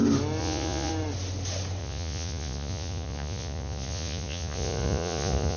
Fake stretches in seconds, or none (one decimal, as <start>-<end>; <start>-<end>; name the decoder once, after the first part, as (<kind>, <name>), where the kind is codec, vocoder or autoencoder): 0.4-0.9 (vocoder, Vocos); 1.8-5.6

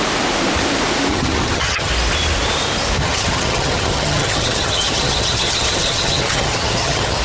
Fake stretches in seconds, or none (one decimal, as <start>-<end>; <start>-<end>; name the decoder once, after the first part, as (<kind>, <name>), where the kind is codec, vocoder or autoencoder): 1.1-1.9 (vocoder, HiFi-GAN); 3.0-7.2

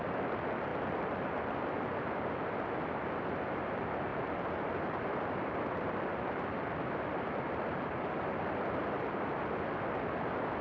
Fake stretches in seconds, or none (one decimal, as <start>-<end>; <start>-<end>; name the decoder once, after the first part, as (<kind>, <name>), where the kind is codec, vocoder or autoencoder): 0.7-1.6 (vocoder, BigVGAN v2); 4.1-9.0

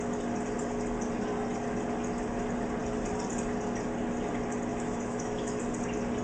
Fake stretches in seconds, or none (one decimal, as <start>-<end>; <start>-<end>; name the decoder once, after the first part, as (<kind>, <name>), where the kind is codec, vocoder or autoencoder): 4.7-5.6 (autoencoder, DAC-VAE)

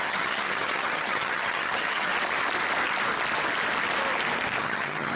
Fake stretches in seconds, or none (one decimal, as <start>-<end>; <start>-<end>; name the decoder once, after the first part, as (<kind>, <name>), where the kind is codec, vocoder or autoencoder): 0.0-2.1 (vocoder, HiFi-GAN); 4.6-5.2

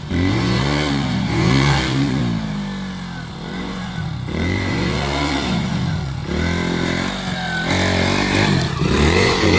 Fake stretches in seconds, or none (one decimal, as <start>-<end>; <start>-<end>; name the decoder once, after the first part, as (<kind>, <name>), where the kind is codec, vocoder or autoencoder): 0.0-2.2 (vocoder, Vocos); 3.3-6.2; 8.8-9.6